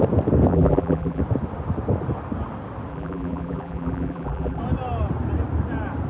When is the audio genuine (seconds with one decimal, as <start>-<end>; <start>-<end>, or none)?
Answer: 0.0-0.5; 1.2-2.9; 4.6-6.1